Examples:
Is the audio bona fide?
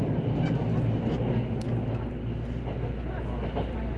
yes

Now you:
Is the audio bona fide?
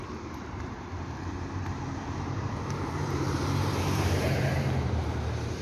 no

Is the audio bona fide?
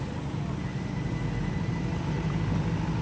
yes